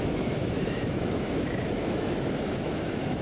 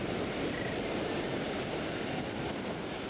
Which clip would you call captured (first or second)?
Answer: second